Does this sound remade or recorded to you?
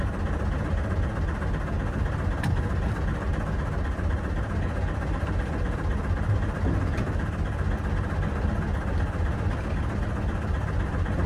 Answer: recorded